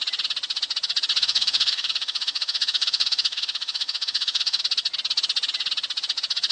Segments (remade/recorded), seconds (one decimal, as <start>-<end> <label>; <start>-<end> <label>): 0.0-1.2 recorded; 1.2-4.6 remade; 4.6-6.5 recorded